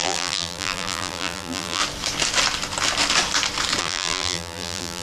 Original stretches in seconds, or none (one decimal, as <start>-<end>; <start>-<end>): 1.8-3.8